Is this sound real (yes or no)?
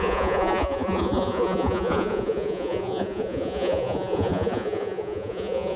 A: no